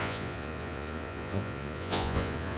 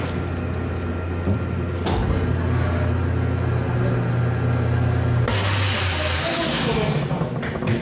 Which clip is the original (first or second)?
second